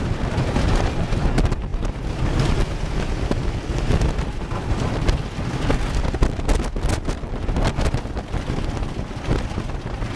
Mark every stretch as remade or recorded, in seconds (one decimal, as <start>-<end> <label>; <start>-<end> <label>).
0.0-10.2 recorded